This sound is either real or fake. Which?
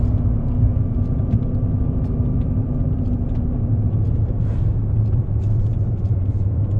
fake